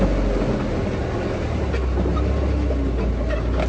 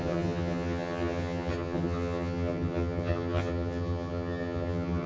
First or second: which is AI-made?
second